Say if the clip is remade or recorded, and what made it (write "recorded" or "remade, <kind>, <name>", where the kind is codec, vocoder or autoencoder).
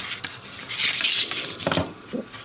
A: recorded